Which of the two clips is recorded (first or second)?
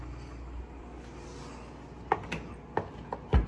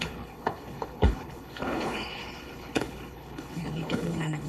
first